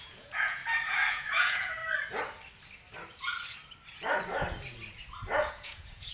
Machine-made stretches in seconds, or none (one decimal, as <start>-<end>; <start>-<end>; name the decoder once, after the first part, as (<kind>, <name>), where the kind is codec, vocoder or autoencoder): 0.0-0.6 (vocoder, Vocos); 1.1-1.8; 5.5-6.1